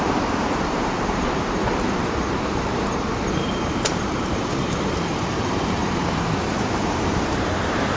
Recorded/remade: remade